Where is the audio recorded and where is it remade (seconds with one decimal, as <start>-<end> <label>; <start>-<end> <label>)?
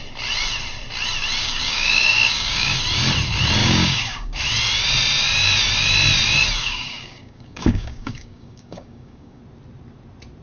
0.0-1.4 recorded; 1.4-2.8 remade; 2.8-3.6 recorded; 3.6-4.4 remade; 4.4-6.6 recorded; 6.6-9.4 remade; 9.4-10.4 recorded